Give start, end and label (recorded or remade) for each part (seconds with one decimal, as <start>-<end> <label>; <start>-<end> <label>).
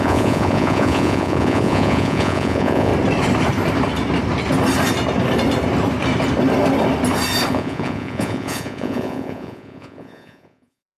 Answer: 0.0-2.9 remade; 2.9-7.5 recorded; 7.5-11.0 remade